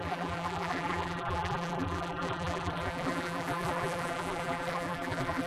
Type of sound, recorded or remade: remade